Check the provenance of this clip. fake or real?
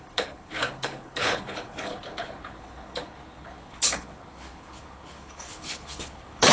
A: fake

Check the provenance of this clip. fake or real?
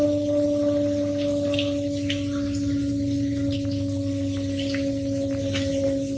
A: real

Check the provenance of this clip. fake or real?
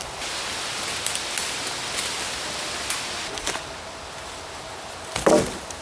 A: real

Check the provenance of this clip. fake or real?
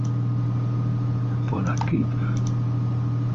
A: real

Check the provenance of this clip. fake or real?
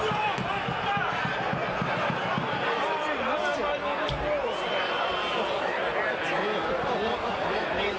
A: real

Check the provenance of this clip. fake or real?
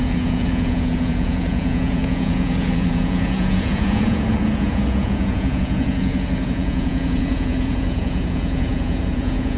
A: fake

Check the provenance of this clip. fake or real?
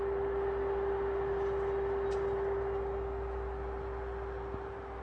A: real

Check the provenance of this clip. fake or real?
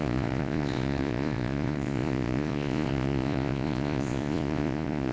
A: fake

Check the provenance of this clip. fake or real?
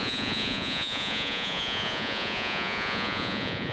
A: fake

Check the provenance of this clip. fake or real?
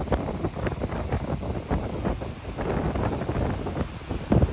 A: real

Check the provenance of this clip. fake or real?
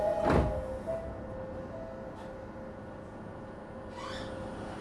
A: real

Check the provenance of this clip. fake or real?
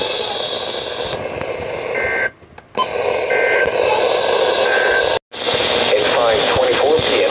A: real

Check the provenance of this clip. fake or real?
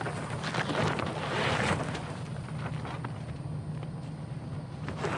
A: real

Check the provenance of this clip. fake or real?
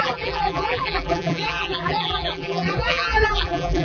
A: fake